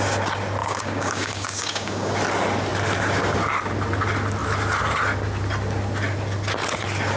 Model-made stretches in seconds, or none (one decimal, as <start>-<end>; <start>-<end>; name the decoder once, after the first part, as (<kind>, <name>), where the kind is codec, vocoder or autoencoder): 0.6-2.1 (codec, DAC)